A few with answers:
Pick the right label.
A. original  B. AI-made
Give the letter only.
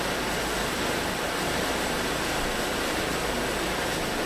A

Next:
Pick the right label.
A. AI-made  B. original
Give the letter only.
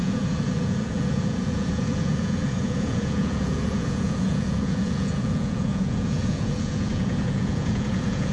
A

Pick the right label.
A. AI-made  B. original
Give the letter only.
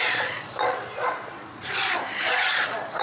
A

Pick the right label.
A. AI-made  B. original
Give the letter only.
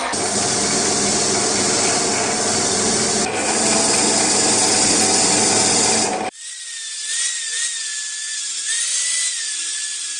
B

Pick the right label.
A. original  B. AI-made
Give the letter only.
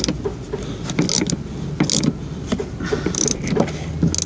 A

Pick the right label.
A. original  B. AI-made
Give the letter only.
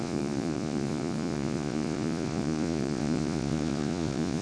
B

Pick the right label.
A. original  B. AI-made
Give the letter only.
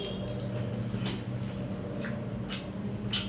A